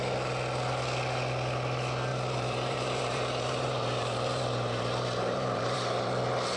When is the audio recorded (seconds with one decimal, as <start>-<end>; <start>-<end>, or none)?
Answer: 0.0-2.1; 6.1-6.6